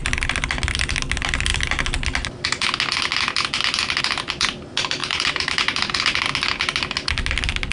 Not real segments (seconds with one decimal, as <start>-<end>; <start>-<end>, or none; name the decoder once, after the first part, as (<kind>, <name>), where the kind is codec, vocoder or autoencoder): 5.0-6.2 (vocoder, BigVGAN v2)